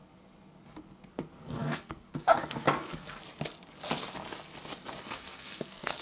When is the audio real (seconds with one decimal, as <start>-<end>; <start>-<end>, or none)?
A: 0.0-1.1; 3.2-5.0